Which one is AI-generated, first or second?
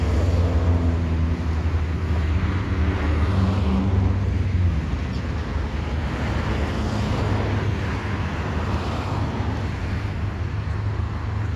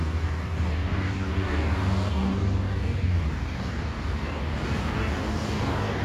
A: second